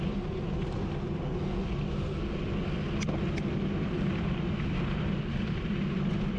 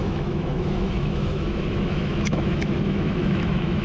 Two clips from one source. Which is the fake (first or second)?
second